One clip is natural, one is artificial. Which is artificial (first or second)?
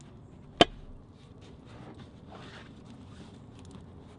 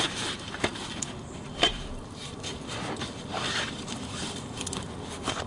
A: second